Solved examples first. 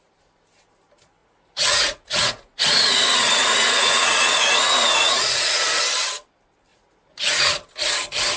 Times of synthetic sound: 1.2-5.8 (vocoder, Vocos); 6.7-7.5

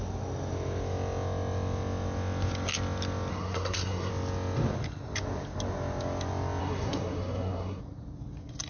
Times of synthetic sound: 3.3-4.1 (codec, SNAC); 6.6-7.8

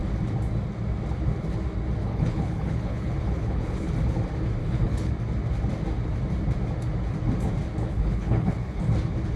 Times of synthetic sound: 2.0-3.9 (codec, HILCodec); 4.6-5.1; 7.9-8.8